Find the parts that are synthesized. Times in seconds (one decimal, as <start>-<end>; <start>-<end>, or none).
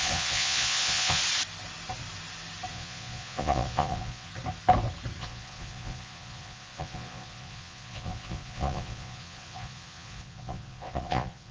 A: 0.0-1.2; 2.7-4.3; 5.2-11.5